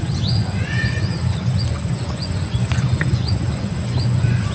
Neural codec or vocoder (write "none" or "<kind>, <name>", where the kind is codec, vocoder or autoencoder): vocoder, Vocos